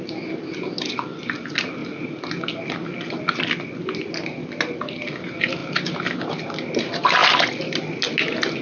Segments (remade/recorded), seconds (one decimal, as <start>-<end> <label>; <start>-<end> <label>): 0.0-8.6 recorded